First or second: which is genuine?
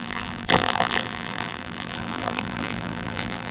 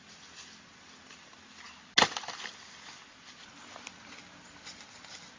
second